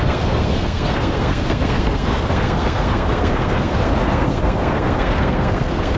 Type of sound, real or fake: fake